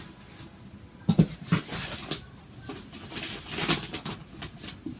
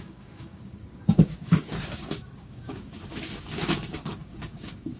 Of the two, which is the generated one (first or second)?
second